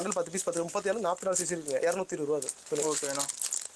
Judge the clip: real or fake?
real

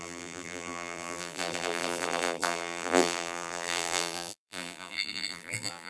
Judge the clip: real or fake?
fake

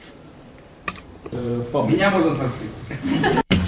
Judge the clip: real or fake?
fake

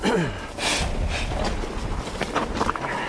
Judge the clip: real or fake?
real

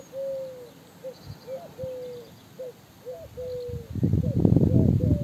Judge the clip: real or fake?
real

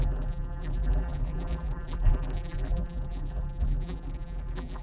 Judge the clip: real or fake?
fake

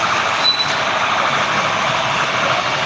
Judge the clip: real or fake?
real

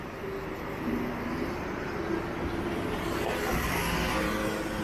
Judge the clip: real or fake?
real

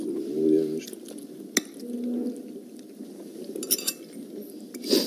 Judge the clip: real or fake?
real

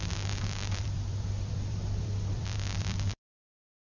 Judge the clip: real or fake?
fake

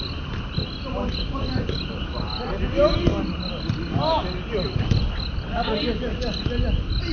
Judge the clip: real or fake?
real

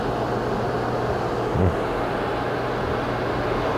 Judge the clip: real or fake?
real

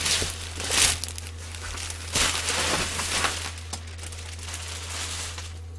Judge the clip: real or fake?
real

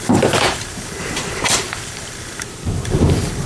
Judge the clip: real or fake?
fake